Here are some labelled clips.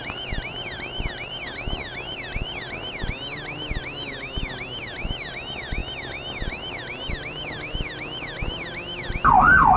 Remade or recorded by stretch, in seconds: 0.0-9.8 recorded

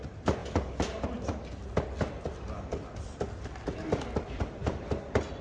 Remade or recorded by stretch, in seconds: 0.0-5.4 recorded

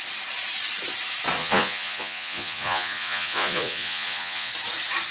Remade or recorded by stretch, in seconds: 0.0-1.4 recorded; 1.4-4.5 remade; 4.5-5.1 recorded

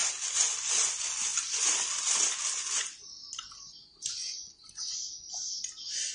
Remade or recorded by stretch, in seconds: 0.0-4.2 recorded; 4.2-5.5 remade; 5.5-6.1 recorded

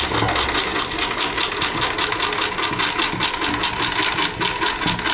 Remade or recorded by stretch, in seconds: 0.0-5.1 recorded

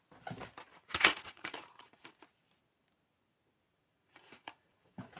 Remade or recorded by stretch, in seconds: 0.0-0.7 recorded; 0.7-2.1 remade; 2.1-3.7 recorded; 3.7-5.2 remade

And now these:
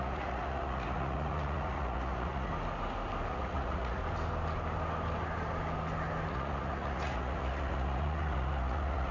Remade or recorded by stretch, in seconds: 0.0-2.5 remade; 2.5-3.3 recorded; 3.3-4.0 remade; 4.0-6.3 recorded; 6.3-9.1 remade

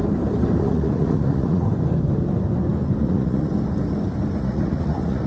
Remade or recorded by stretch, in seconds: 0.0-0.6 recorded; 0.6-1.7 remade; 1.7-3.0 recorded; 3.0-3.5 remade; 3.5-4.4 recorded; 4.4-5.3 remade